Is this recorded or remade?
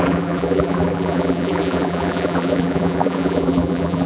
remade